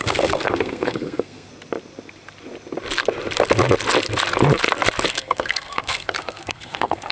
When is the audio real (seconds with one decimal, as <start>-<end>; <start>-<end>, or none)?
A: 1.5-5.1